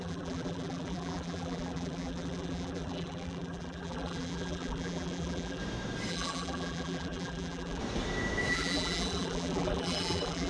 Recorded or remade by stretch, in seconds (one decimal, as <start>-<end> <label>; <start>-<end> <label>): 0.0-5.6 remade; 5.6-6.1 recorded; 6.1-7.8 remade; 7.8-8.5 recorded; 8.5-10.5 remade